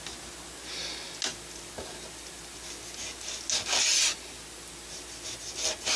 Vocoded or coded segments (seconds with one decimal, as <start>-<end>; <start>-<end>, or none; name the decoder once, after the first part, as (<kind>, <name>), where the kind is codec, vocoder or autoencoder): none